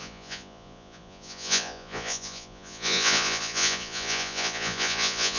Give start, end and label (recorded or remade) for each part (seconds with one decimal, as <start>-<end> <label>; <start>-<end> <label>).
0.0-5.4 remade